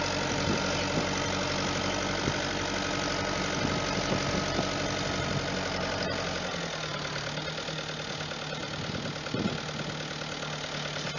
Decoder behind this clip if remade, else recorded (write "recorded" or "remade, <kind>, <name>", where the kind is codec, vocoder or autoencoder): recorded